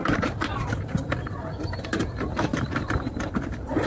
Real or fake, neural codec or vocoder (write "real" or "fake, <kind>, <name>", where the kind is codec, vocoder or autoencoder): fake, vocoder, BigVGAN v2